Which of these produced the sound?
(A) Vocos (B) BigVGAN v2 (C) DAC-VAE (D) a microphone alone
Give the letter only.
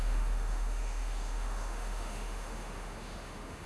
C